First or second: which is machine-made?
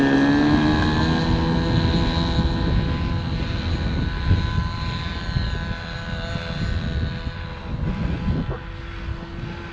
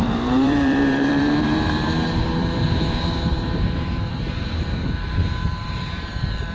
second